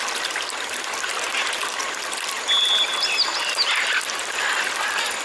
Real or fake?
real